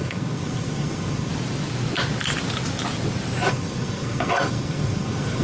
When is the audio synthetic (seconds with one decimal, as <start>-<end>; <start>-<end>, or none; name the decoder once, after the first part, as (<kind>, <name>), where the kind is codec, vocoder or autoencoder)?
0.0-1.3 (codec, SNAC); 3.5-5.4